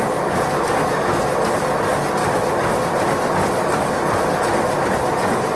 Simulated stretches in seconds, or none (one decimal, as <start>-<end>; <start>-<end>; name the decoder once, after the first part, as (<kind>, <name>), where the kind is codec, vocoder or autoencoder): 2.2-3.3 (vocoder, BigVGAN v2)